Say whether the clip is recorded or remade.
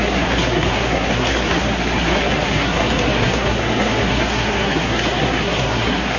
remade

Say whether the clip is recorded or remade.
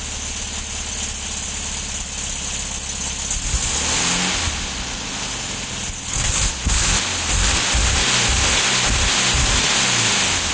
recorded